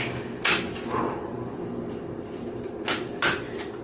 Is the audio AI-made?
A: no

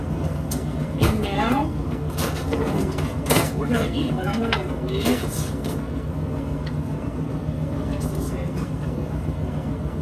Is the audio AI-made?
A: yes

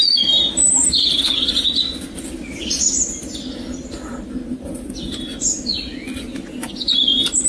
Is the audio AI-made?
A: no